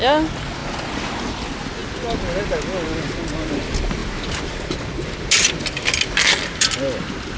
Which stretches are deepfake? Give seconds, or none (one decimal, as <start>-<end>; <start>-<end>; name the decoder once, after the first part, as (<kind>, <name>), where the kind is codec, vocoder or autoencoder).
none